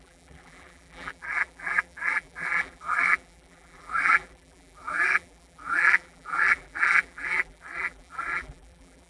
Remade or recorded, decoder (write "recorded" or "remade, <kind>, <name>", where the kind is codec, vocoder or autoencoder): remade, vocoder, BigVGAN v2